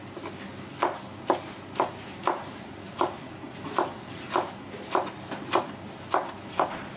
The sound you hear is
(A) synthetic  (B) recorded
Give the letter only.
B